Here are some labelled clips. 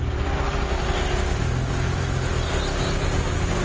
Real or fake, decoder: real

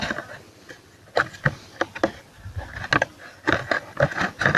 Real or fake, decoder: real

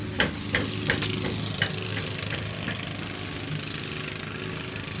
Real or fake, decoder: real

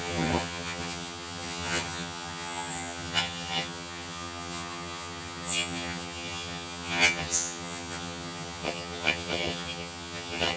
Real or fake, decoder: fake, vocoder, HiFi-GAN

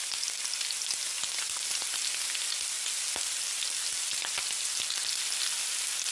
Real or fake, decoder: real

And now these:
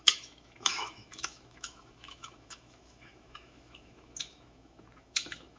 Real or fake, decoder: fake, autoencoder, DAC-VAE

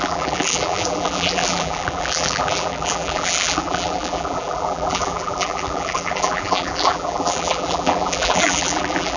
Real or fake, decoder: fake, vocoder, BigVGAN v2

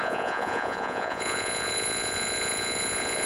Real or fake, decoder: fake, vocoder, Vocos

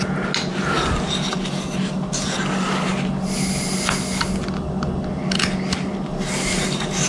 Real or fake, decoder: real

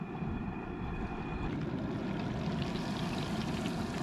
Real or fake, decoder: real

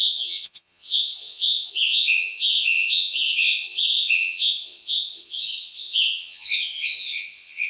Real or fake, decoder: fake, vocoder, Vocos